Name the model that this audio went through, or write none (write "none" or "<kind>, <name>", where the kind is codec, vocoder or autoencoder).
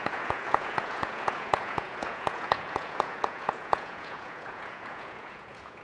vocoder, Vocos